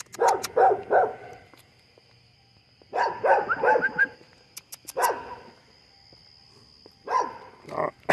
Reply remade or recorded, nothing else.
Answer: recorded